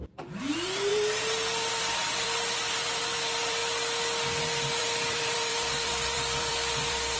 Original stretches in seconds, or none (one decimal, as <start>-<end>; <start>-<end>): 3.6-4.8